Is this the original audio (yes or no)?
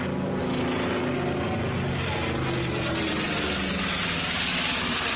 yes